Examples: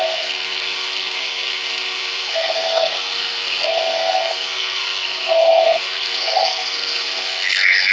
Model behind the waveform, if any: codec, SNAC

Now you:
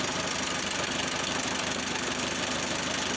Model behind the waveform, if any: none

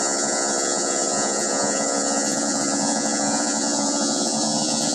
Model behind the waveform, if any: vocoder, Vocos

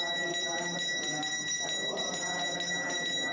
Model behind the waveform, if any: none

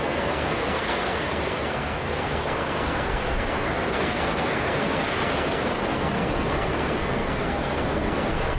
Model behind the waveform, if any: codec, SNAC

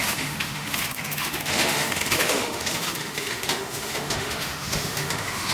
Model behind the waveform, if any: autoencoder, DAC-VAE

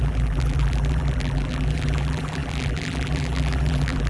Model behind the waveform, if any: vocoder, BigVGAN v2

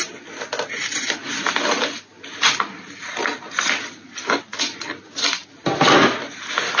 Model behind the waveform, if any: none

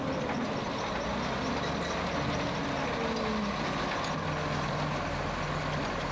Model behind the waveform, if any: none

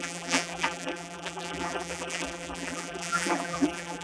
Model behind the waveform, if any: vocoder, BigVGAN v2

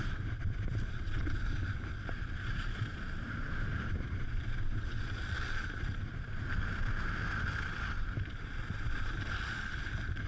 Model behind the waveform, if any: none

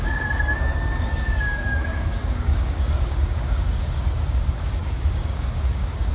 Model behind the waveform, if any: codec, DAC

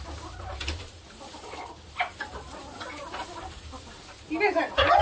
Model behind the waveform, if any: none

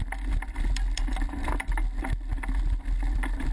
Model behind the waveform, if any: none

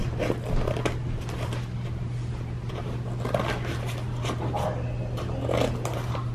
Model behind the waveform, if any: none